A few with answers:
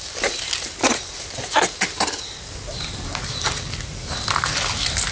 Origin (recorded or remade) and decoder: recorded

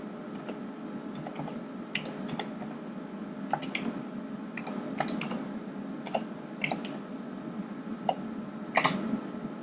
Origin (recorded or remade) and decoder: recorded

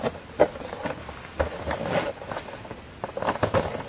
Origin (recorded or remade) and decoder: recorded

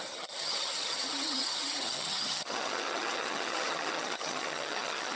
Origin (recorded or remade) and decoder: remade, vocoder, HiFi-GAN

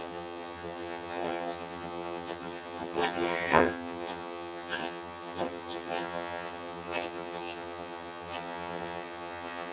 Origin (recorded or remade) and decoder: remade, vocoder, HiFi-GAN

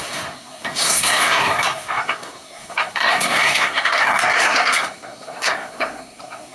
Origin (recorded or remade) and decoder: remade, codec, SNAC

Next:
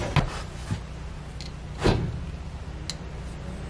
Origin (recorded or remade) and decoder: recorded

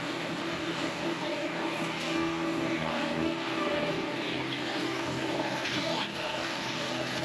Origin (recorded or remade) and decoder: remade, codec, DAC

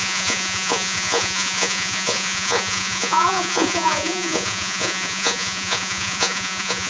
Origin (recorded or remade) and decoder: remade, vocoder, Vocos